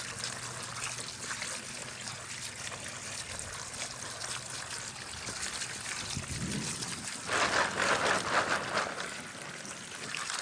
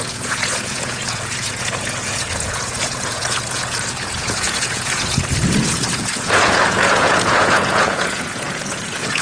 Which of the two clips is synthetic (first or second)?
second